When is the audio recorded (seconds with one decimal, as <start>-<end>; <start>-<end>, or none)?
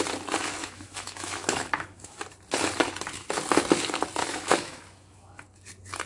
0.0-0.6; 2.2-4.2; 5.4-6.1